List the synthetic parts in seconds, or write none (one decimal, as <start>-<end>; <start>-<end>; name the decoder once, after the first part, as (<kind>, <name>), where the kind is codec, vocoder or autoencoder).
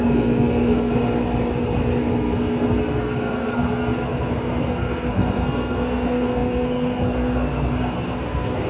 0.0-0.9 (codec, SNAC); 2.0-8.7